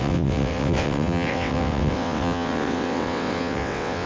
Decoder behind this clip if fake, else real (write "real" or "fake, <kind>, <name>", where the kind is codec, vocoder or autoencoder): fake, vocoder, WaveNeXt